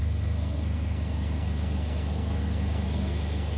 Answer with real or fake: fake